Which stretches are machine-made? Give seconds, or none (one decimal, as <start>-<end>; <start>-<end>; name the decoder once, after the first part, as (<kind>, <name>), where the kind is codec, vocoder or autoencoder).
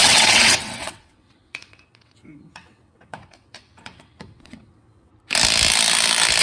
0.0-5.1 (vocoder, WaveNeXt)